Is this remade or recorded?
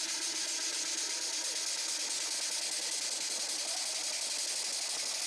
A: recorded